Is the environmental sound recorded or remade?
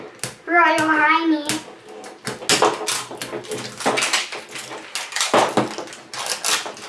recorded